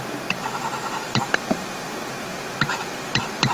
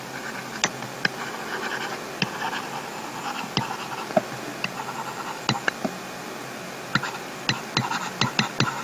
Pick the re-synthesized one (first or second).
first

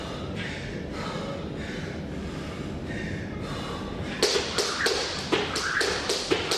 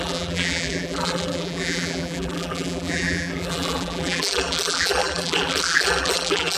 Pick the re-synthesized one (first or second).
second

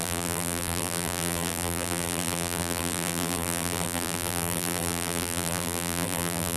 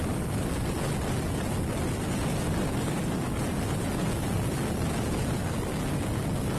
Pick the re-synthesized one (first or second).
first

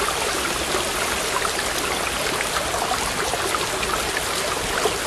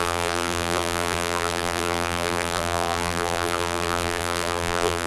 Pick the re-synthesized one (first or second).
second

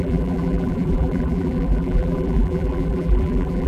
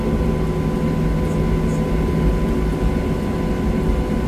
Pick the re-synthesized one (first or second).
first